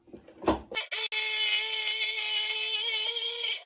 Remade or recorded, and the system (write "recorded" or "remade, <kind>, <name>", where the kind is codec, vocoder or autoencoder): recorded